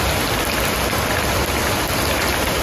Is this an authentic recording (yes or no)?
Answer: yes